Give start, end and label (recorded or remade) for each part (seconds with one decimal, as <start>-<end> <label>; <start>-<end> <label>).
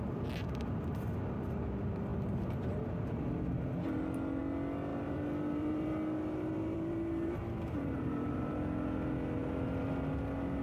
0.0-4.9 recorded; 4.9-8.5 remade; 8.5-10.6 recorded